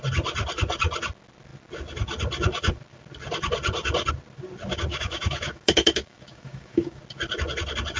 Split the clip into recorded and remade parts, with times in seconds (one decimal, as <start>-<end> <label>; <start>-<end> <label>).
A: 0.0-4.9 recorded; 4.9-7.0 remade; 7.0-8.0 recorded